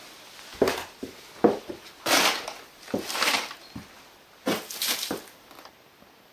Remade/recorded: recorded